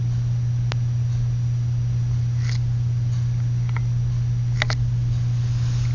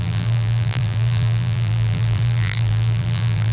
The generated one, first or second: second